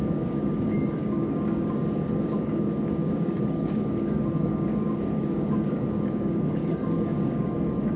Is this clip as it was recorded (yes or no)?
no